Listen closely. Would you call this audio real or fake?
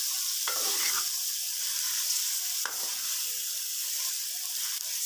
fake